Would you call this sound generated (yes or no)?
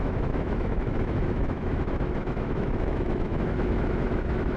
yes